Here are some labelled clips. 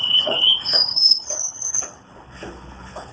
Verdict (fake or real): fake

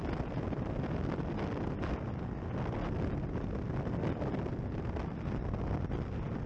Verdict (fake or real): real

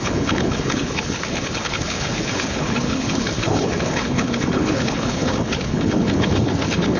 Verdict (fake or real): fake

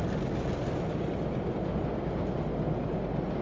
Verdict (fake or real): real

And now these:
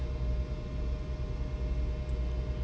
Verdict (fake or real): real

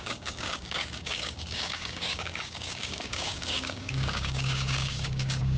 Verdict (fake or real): fake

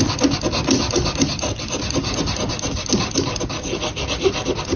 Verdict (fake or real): real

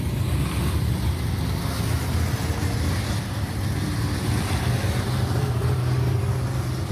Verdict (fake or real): real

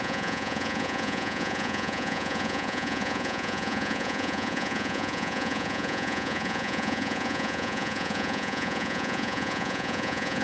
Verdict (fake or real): fake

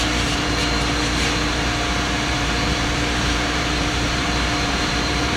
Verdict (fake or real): fake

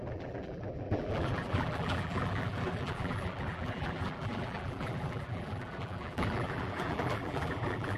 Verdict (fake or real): fake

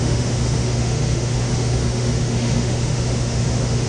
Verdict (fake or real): fake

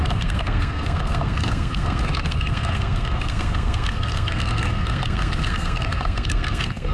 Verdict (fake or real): fake